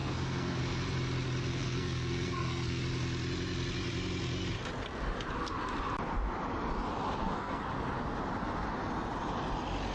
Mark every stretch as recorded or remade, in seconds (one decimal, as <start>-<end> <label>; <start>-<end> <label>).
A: 0.0-0.6 remade; 0.6-1.5 recorded; 1.5-2.8 remade; 2.8-7.2 recorded; 7.2-7.7 remade; 7.7-9.9 recorded